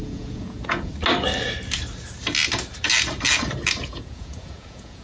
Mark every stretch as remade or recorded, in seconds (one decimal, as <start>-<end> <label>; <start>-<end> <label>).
0.0-0.9 remade; 0.9-3.8 recorded; 3.8-5.0 remade